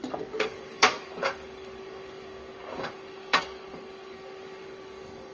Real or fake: fake